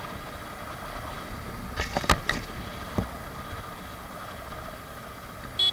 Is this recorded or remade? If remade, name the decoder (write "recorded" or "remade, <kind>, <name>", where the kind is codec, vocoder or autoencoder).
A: recorded